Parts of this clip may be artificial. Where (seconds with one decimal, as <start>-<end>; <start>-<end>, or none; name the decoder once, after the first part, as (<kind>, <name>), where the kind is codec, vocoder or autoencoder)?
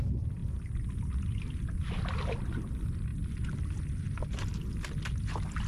none